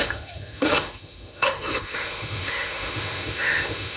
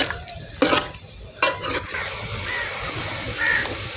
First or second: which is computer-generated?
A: first